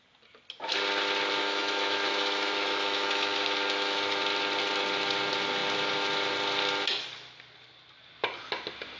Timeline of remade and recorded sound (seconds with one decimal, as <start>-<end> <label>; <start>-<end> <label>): 0.0-1.4 recorded; 1.4-4.2 remade; 4.2-9.0 recorded

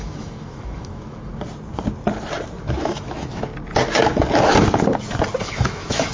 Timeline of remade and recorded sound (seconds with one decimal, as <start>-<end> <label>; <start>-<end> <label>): 0.0-1.3 remade; 1.3-2.6 recorded; 2.6-3.5 remade; 3.5-5.4 recorded; 5.4-6.1 remade

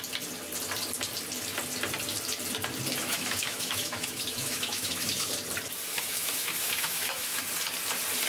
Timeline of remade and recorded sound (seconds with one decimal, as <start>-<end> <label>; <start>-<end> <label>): 0.0-3.0 recorded; 3.0-5.3 remade; 5.3-5.9 recorded; 5.9-7.4 remade; 7.4-8.3 recorded

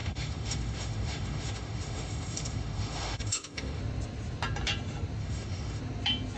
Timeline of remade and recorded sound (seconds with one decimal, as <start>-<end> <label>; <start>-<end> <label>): 0.0-3.8 remade; 3.8-5.2 recorded; 5.2-5.8 remade; 5.8-6.4 recorded

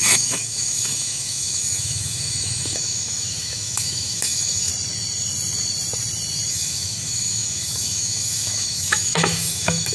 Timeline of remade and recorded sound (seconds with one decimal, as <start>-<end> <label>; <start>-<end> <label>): 0.0-4.7 remade; 4.7-6.5 recorded; 6.5-9.9 remade

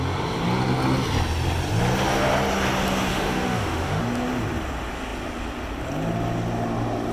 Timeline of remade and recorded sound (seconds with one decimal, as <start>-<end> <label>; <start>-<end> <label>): 0.0-3.1 recorded; 3.1-4.0 remade; 4.0-7.1 recorded

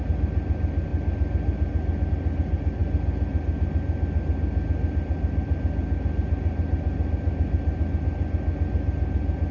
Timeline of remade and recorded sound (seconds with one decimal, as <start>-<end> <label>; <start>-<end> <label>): 0.0-9.5 recorded